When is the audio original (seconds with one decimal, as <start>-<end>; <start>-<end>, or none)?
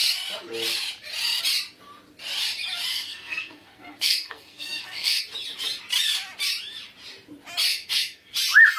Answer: 0.0-2.9; 5.2-7.7; 8.3-8.8